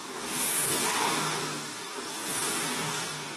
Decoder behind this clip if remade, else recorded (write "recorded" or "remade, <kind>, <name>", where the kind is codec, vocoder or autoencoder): remade, codec, DAC